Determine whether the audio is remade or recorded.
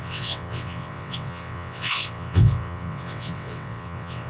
remade